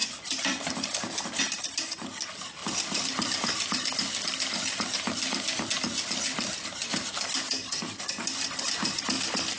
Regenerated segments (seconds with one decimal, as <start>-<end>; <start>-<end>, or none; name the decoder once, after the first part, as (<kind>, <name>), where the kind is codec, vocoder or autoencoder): 0.0-1.4 (vocoder, BigVGAN v2); 2.6-5.7